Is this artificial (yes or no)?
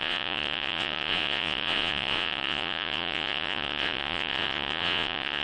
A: yes